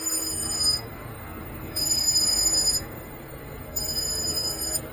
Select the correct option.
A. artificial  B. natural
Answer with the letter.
A